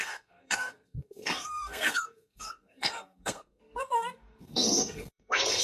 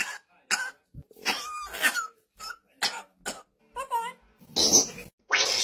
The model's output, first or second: first